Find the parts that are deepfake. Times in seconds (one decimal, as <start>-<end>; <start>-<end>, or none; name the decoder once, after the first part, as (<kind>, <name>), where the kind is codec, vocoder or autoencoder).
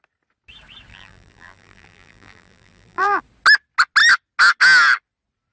0.9-3.2 (vocoder, BigVGAN v2)